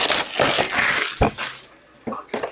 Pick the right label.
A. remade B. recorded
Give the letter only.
B